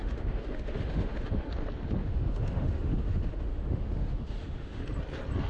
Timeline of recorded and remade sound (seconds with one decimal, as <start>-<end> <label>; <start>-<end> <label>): 0.0-1.5 remade; 1.5-2.0 recorded; 2.0-4.8 remade; 4.8-5.5 recorded

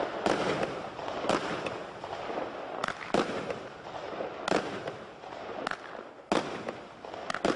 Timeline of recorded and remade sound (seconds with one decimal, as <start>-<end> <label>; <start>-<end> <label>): 0.0-2.8 recorded; 2.8-3.5 remade; 3.5-7.6 recorded

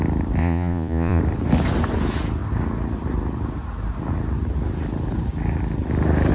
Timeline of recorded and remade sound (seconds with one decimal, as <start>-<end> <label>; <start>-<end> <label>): 0.0-0.4 recorded; 0.4-1.2 remade; 1.2-6.3 recorded